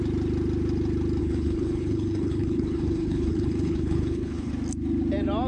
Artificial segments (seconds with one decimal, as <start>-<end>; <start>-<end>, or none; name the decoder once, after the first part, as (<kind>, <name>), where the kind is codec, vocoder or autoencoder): 1.2-4.5 (codec, HILCodec)